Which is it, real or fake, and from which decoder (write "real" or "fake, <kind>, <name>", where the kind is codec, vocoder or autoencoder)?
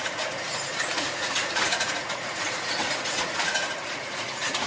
fake, vocoder, Vocos